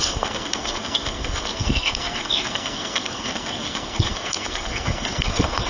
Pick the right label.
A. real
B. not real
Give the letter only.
B